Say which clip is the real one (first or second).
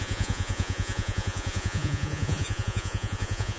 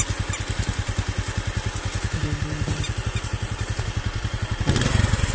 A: second